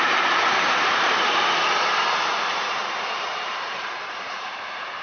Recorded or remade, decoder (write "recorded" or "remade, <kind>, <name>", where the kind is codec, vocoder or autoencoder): remade, vocoder, BigVGAN v2